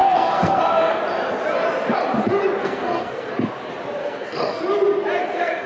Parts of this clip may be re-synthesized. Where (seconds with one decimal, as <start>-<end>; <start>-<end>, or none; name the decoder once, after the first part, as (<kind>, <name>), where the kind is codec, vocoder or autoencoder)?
0.0-1.0 (codec, SNAC); 2.6-3.3; 4.0-4.6; 5.2-5.7